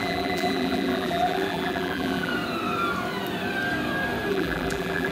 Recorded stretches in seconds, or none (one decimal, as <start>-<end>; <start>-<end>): 2.3-4.3